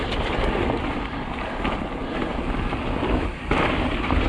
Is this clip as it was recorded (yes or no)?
yes